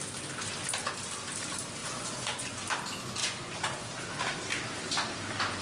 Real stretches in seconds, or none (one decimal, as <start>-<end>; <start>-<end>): 0.0-1.8; 2.6-3.2; 3.9-5.6